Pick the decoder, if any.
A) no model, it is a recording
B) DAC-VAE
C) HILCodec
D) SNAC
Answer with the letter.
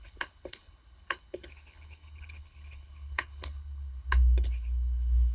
C